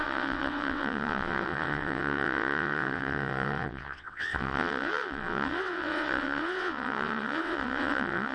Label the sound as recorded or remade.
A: remade